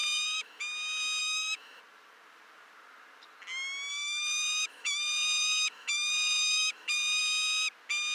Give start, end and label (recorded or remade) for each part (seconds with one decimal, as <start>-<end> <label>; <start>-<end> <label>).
0.0-0.6 remade; 0.6-1.2 recorded; 1.2-1.8 remade; 1.8-3.9 recorded; 3.9-7.2 remade; 7.2-8.1 recorded